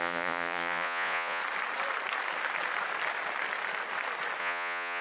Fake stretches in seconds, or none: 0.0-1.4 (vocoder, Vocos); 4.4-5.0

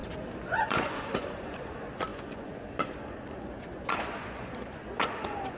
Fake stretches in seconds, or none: 0.6-5.6 (vocoder, Vocos)

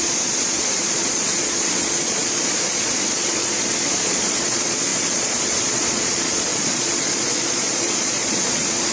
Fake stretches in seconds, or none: 0.0-8.9 (vocoder, Vocos)